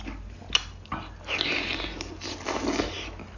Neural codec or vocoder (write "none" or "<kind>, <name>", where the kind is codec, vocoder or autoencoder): none